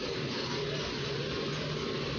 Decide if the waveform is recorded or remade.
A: recorded